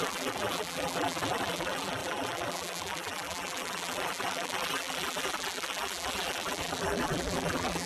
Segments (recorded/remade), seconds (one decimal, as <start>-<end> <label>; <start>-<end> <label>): 0.0-7.9 remade